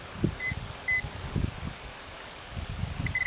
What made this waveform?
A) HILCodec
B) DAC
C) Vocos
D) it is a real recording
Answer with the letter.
B